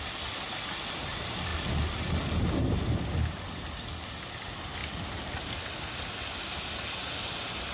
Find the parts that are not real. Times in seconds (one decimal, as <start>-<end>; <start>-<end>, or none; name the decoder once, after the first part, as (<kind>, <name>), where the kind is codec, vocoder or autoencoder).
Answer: none